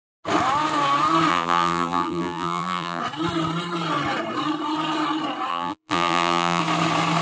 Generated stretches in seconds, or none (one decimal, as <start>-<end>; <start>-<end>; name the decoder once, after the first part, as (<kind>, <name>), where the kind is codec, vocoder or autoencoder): 1.3-3.0 (vocoder, BigVGAN v2); 5.5-6.6